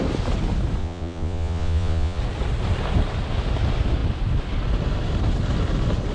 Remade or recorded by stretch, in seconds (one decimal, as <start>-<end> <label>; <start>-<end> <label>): 0.0-0.8 recorded; 0.8-2.2 remade; 2.2-6.1 recorded